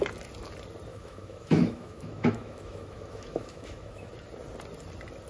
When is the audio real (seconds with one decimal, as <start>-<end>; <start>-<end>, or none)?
0.0-0.9; 4.1-5.3